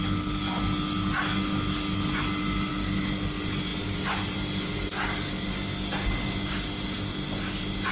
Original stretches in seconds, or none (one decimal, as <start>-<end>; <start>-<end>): 0.0-7.9